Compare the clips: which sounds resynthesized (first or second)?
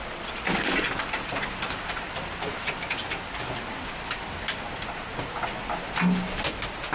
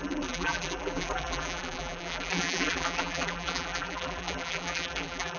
second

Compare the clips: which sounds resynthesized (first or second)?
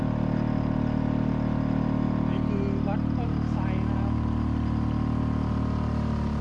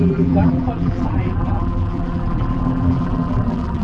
second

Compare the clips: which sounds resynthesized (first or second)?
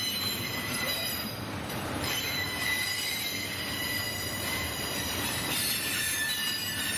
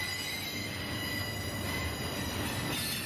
first